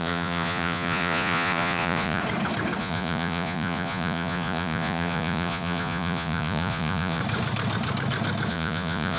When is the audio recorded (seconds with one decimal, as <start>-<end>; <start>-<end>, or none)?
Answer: 2.2-2.8; 7.2-8.5